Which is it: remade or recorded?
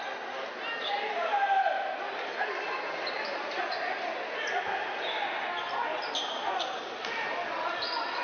recorded